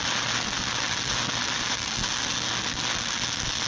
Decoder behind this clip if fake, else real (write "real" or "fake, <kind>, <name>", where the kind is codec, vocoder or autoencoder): real